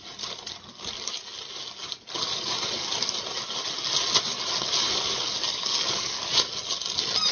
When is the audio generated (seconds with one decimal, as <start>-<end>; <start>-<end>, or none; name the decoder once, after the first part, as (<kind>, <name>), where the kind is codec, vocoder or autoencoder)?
5.5-6.3 (codec, DAC)